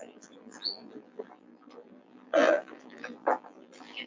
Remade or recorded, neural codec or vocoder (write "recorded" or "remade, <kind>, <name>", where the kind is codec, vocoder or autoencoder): remade, vocoder, BigVGAN v2